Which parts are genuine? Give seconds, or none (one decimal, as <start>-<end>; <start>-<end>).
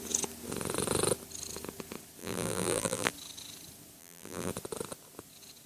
0.0-2.2; 3.1-4.0; 4.5-5.7